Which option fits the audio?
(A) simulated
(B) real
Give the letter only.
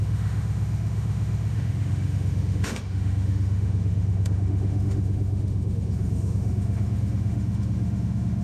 A